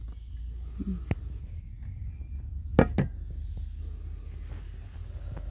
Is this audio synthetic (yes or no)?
no